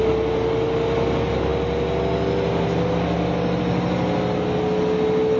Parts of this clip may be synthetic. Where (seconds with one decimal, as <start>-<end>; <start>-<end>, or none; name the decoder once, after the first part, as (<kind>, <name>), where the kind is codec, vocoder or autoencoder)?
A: none